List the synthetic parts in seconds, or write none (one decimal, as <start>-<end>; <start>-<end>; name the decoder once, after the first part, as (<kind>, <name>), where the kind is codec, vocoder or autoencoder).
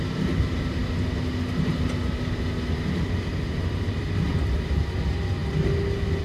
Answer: none